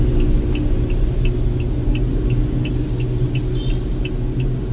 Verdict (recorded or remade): recorded